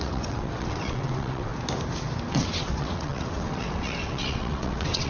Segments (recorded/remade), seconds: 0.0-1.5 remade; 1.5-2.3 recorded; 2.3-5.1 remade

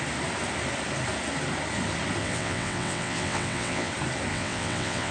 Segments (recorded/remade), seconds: 0.0-2.2 recorded; 2.2-3.9 remade; 3.9-4.3 recorded; 4.3-5.1 remade

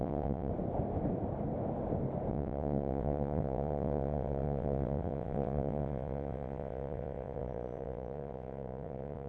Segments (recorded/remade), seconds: 0.0-0.5 remade; 0.5-2.3 recorded; 2.3-9.3 remade

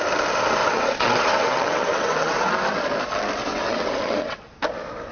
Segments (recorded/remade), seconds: 0.0-0.6 recorded; 0.6-2.5 remade; 2.5-3.5 recorded; 3.5-4.4 remade; 4.4-5.1 recorded

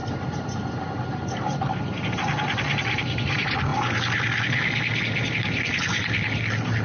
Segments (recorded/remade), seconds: 0.0-6.8 recorded

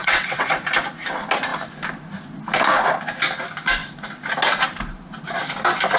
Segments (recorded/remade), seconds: 0.0-0.5 remade; 0.5-6.0 recorded

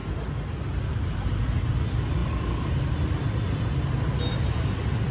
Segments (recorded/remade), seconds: 0.0-5.1 recorded